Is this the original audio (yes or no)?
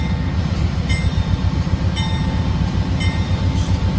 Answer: yes